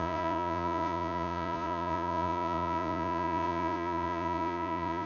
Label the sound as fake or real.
fake